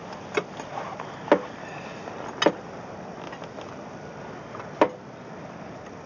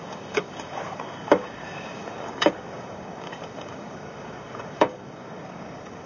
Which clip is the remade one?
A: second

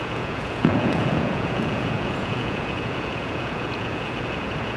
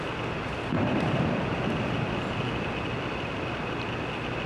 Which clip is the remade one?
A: first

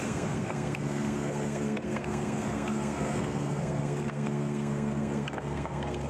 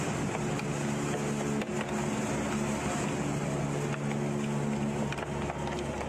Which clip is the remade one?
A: first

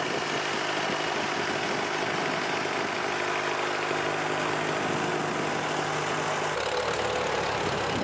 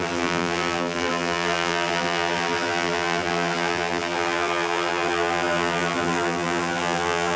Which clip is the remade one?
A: second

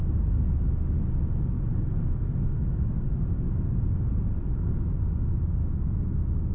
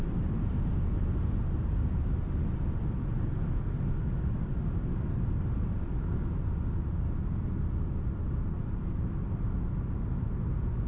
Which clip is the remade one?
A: second